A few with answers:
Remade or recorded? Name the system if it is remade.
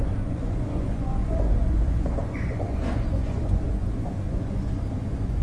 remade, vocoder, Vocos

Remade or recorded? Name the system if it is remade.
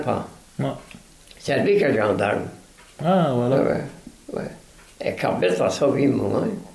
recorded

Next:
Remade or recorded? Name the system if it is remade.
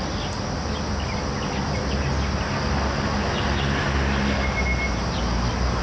recorded